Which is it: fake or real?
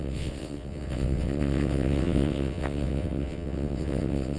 fake